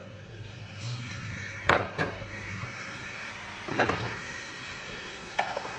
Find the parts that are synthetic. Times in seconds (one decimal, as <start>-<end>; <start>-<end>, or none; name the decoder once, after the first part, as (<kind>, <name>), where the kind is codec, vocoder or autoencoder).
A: 0.0-3.3 (codec, SNAC); 3.7-5.8